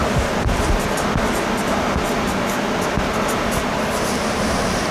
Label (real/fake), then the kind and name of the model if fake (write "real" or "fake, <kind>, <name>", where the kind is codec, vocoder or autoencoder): real